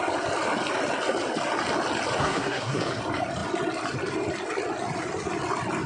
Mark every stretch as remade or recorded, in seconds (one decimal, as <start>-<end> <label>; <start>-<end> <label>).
0.0-2.2 recorded; 2.2-3.0 remade; 3.0-5.9 recorded